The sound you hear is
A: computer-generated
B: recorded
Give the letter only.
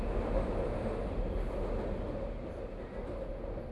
B